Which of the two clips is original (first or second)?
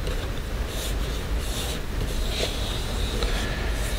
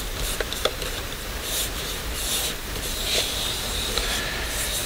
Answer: first